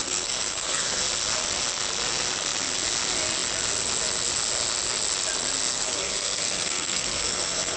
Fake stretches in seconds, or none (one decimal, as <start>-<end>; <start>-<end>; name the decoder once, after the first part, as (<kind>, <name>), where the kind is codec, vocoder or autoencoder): 0.0-1.0 (codec, SNAC); 5.7-7.8